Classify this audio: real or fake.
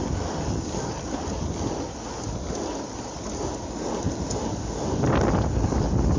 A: real